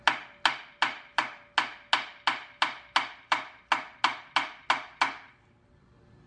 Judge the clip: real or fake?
real